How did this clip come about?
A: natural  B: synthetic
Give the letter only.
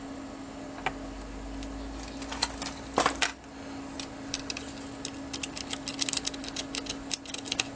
A